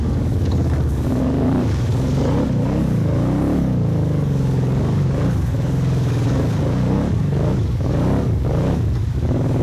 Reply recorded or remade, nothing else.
remade